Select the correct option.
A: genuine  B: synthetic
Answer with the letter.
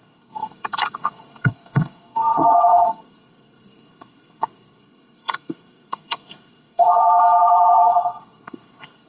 B